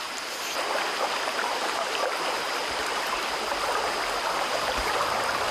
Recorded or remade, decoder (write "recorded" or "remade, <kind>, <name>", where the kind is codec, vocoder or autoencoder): remade, vocoder, BigVGAN v2